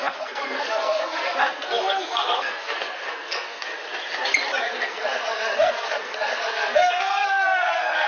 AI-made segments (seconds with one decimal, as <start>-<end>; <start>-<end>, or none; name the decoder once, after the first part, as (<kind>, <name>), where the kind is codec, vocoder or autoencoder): 0.0-3.7 (codec, SNAC); 4.6-8.1